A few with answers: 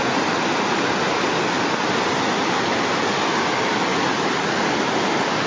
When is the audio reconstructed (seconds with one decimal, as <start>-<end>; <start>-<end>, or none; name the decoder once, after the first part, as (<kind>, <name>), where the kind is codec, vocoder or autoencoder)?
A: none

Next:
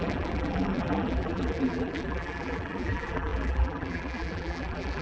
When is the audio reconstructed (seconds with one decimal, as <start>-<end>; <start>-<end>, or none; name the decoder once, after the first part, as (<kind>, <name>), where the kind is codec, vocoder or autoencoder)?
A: 0.0-5.0 (vocoder, BigVGAN v2)

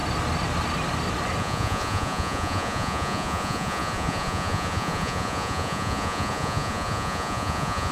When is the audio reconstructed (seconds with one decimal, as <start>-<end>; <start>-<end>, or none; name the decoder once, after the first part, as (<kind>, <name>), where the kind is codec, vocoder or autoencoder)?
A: 1.4-7.9 (vocoder, Vocos)